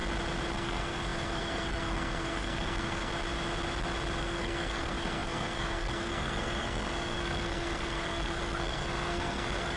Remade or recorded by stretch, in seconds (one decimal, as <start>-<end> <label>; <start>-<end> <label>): 0.0-0.5 recorded; 0.5-3.1 remade; 3.1-4.2 recorded; 4.2-9.8 remade